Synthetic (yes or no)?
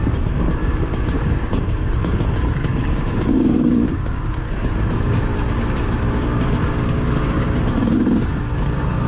yes